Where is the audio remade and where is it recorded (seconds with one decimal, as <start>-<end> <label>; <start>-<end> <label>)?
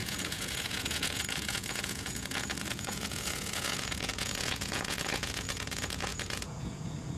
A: 0.0-7.2 remade